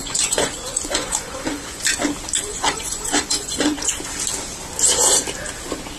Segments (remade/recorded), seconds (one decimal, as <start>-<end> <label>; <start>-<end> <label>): 0.0-1.8 remade; 1.8-2.5 recorded; 2.5-3.9 remade; 3.9-6.0 recorded